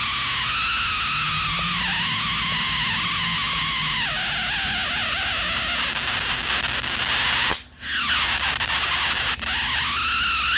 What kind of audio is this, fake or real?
real